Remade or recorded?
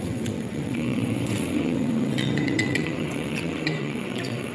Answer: remade